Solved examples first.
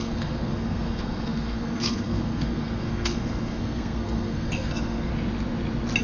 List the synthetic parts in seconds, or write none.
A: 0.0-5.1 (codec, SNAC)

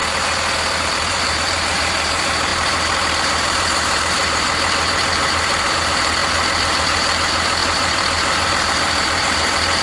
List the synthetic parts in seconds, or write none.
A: 0.8-9.8 (vocoder, BigVGAN v2)

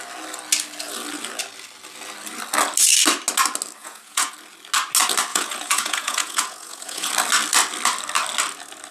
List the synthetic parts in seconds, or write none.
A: 3.8-4.3 (vocoder, Vocos); 5.3-7.1

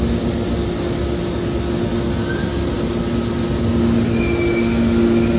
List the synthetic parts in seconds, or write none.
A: none

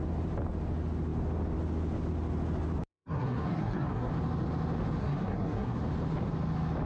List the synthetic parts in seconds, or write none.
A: 2.9-4.1 (codec, SNAC); 5.0-5.8

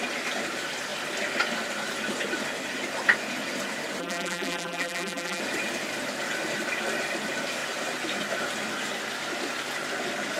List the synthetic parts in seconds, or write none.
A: 4.0-5.4 (vocoder, BigVGAN v2)